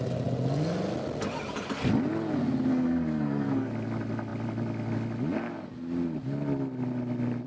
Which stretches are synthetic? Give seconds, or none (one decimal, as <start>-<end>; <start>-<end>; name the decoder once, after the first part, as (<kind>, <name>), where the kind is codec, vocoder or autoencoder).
2.7-3.7 (codec, SNAC)